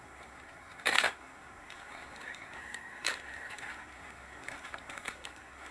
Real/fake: fake